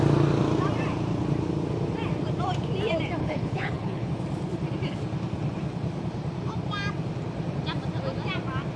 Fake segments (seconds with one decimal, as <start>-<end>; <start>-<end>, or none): 3.2-4.1